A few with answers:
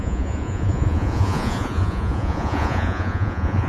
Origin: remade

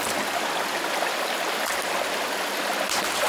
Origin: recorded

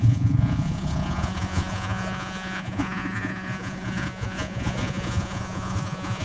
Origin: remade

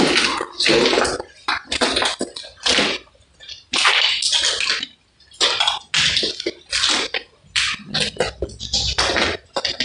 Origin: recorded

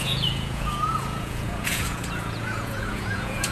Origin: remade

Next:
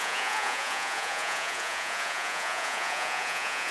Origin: remade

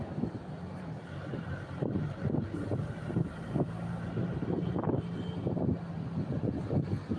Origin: recorded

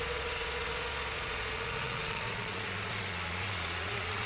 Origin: remade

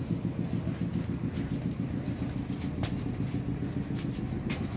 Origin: recorded